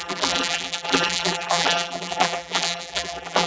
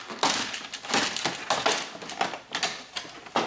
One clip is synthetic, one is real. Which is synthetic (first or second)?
first